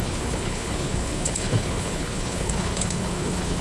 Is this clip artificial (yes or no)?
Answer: yes